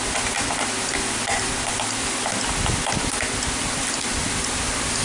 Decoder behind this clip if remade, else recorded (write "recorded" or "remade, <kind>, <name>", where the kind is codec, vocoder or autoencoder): recorded